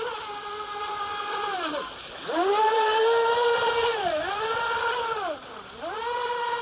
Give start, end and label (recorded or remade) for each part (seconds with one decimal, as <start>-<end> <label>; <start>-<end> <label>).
0.0-6.6 recorded